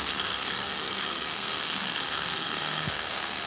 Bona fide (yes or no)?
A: no